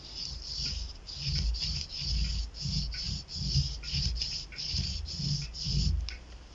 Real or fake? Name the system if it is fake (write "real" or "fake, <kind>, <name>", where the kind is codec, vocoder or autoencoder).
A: real